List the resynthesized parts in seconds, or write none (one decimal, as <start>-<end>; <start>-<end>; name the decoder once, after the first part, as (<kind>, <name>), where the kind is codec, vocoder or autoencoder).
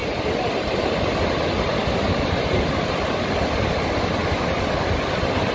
none